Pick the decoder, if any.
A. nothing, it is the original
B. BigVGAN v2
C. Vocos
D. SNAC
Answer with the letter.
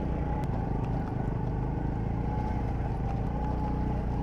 A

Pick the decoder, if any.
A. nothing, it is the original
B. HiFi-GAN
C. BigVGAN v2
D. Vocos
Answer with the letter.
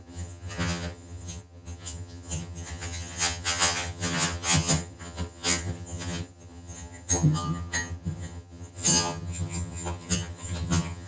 B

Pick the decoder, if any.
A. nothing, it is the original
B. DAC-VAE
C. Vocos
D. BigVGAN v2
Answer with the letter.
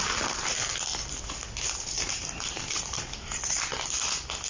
A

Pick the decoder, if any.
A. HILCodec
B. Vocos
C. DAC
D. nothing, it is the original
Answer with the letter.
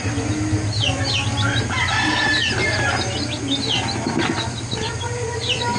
D